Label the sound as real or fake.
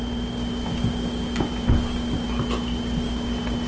real